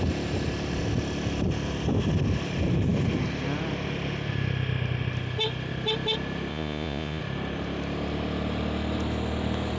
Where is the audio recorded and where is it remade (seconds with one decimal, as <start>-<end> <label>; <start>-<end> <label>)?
0.0-6.5 recorded; 6.5-7.2 remade; 7.2-9.8 recorded